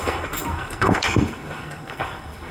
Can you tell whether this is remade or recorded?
remade